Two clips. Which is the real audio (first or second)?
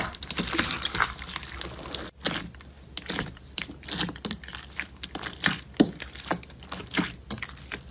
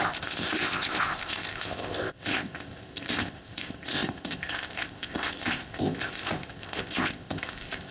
first